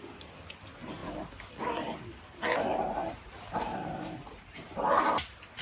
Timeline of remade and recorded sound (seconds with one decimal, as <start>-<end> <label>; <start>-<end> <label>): 0.0-3.0 recorded; 3.0-5.0 remade; 5.0-5.6 recorded